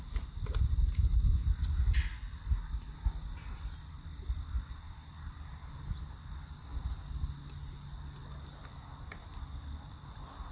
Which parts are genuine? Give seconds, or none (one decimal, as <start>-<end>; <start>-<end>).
0.0-10.5